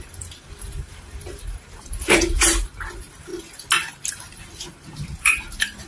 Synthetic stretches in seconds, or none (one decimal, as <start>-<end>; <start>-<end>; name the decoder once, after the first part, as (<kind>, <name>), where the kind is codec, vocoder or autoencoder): 0.0-3.3 (vocoder, BigVGAN v2); 4.1-5.9